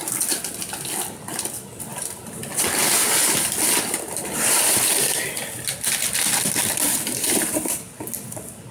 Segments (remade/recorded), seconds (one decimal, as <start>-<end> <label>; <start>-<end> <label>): 0.0-1.9 recorded; 1.9-2.4 remade; 2.4-8.7 recorded